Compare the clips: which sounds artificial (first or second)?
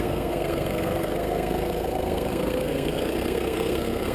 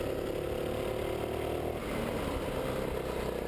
first